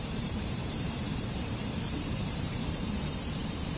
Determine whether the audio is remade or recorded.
remade